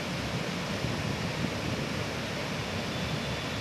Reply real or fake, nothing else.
real